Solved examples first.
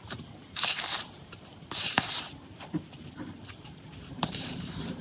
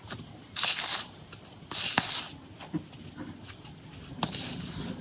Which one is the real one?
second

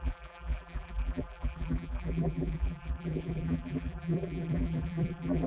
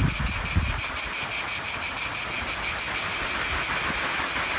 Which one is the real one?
second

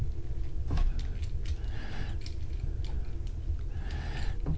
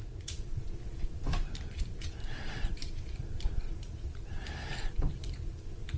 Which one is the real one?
first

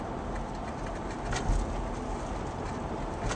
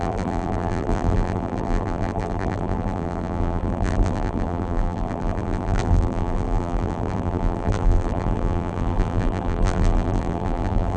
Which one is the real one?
first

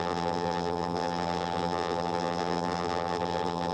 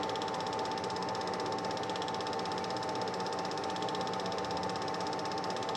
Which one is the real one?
second